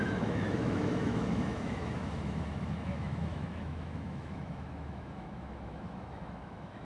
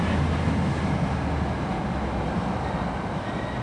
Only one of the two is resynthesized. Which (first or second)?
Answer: first